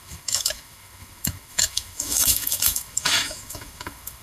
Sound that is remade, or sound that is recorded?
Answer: remade